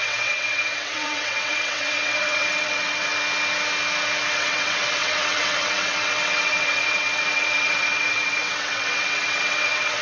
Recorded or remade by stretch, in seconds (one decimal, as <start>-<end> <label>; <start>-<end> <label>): 0.0-3.1 remade; 3.1-4.3 recorded; 4.3-10.0 remade